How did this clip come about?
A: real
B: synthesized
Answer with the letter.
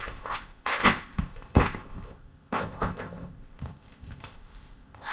B